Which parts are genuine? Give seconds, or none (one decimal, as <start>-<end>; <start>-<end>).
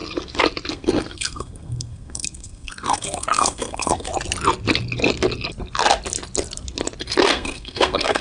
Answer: 0.0-0.7; 4.1-7.2